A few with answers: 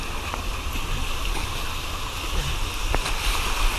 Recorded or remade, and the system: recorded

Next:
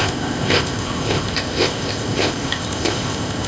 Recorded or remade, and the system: remade, codec, ZipCodec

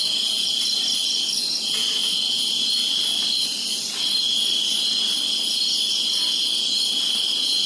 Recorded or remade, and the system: recorded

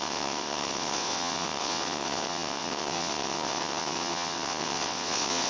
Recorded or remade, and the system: remade, vocoder, WaveNeXt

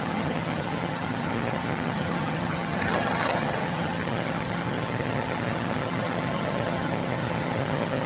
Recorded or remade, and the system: remade, vocoder, HiFi-GAN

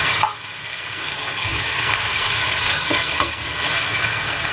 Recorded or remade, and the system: remade, codec, SNAC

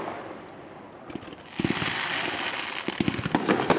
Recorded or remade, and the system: recorded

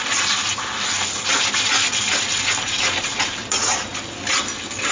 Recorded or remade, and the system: recorded